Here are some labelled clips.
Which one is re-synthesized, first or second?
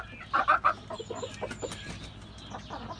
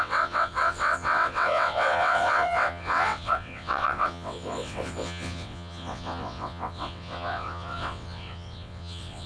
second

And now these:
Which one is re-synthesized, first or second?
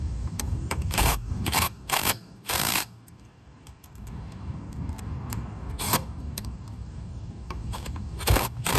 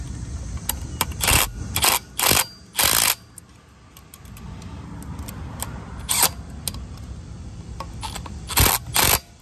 first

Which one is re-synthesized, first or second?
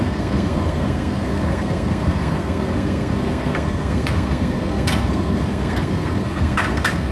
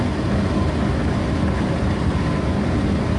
first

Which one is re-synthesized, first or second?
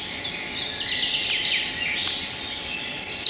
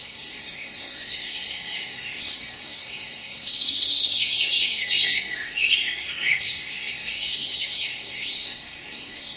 second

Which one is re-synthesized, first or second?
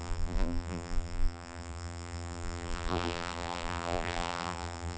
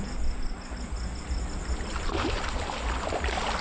first